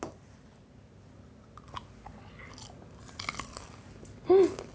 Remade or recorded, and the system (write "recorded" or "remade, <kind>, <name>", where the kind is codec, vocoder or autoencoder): recorded